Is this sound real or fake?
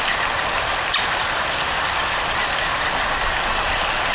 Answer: real